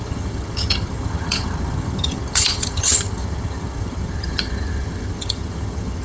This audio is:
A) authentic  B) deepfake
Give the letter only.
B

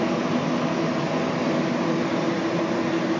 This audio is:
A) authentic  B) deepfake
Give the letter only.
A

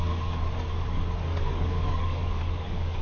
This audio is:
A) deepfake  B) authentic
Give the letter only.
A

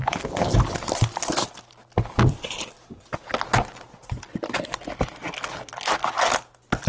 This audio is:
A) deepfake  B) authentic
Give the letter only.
B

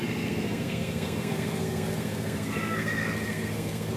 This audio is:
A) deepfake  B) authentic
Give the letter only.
A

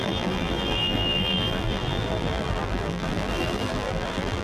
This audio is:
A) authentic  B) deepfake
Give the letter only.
B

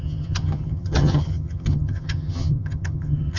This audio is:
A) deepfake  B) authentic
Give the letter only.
A